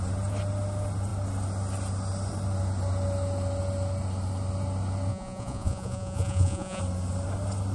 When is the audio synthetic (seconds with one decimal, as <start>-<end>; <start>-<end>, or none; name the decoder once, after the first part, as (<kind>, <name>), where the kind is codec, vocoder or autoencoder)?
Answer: 5.1-6.8 (vocoder, Vocos)